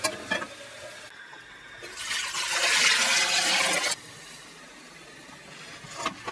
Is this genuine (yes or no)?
yes